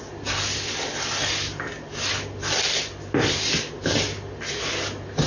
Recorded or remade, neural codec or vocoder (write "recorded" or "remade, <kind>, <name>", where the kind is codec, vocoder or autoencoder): recorded